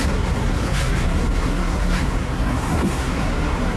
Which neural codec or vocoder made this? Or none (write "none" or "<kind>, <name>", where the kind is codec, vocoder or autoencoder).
codec, SNAC